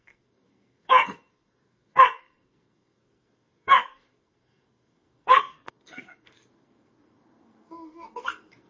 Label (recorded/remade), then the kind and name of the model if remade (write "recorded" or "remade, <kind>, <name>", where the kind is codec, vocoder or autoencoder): remade, codec, SNAC